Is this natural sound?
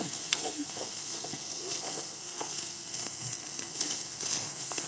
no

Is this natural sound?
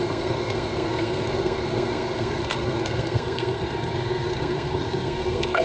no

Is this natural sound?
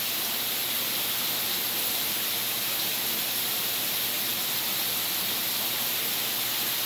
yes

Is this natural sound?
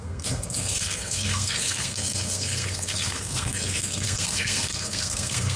no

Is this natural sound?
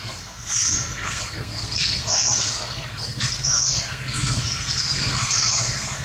no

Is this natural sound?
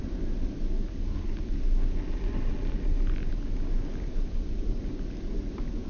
yes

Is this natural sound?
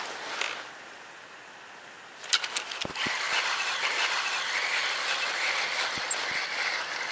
yes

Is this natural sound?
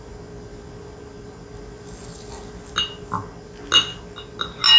yes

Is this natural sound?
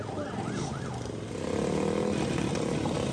yes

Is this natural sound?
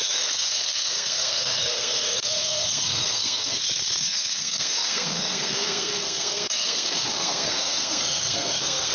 no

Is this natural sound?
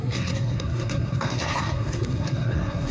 no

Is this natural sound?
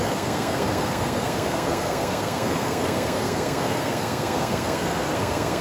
no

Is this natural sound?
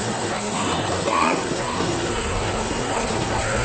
no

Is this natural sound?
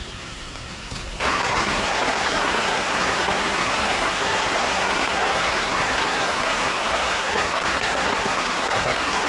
no